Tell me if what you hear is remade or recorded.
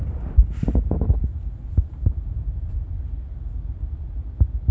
recorded